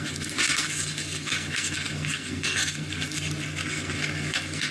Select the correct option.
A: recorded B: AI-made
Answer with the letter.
B